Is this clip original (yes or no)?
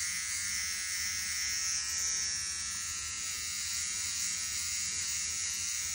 no